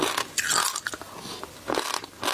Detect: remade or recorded recorded